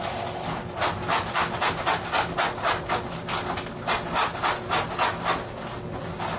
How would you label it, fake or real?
real